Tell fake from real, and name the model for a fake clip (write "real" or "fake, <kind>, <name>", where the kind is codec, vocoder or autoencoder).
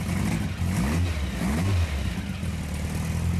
real